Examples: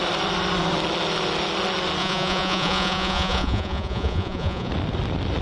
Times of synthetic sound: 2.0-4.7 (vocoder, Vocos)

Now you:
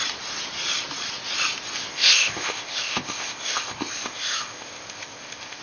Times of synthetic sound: 1.9-5.6 (codec, ZipCodec)